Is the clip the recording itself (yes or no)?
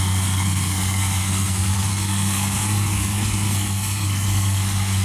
no